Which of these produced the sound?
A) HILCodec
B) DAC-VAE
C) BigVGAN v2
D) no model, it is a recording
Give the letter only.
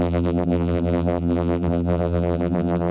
C